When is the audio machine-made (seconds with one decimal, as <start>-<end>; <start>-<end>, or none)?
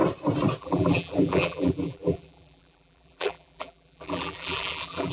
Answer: 0.6-5.1